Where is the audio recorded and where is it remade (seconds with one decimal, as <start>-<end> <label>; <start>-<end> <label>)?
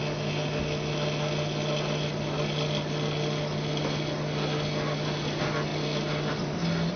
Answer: 0.0-7.0 recorded